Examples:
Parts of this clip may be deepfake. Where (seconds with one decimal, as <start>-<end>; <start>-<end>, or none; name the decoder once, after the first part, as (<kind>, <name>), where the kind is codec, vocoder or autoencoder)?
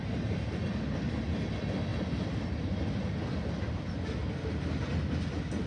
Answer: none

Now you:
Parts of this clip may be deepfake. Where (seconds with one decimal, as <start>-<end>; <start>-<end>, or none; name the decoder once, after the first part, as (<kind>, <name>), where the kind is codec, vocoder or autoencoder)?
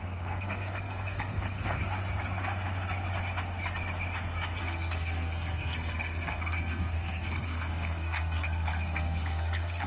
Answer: 0.0-1.8 (codec, SNAC); 4.6-9.9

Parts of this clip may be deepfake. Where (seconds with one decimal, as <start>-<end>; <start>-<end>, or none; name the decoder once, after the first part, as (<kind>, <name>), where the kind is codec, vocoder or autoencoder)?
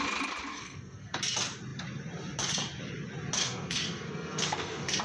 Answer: 0.5-1.2 (codec, SNAC); 3.4-5.0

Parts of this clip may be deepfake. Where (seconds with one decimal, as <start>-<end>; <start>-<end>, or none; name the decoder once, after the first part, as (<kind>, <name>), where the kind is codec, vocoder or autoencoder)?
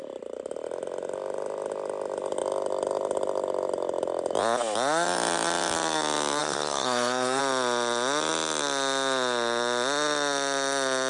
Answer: 6.4-7.4 (codec, SNAC)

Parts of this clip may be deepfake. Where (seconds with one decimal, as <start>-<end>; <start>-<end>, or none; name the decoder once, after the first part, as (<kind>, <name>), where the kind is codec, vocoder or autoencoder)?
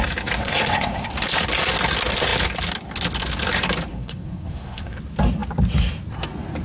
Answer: 0.4-1.1 (codec, SNAC); 3.9-5.0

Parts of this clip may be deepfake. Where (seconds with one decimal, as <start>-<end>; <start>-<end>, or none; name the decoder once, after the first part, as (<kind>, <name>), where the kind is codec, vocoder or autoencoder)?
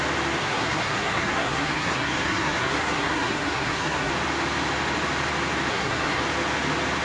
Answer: 0.4-4.1 (codec, SNAC); 5.7-6.2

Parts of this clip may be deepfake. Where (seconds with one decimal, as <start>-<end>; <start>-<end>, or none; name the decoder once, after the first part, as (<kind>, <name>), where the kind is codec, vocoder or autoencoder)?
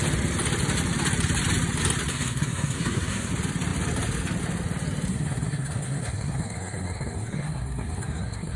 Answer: 2.1-3.3 (codec, SNAC); 5.1-8.6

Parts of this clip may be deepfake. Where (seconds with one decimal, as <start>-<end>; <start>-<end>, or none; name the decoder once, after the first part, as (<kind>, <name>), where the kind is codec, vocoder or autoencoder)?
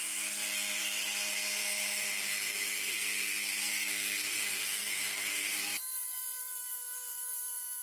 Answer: 0.0-7.8 (codec, SNAC)